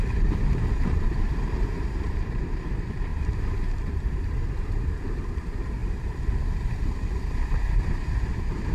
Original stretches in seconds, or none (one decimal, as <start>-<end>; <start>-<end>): none